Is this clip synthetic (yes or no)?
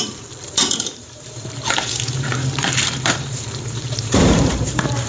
yes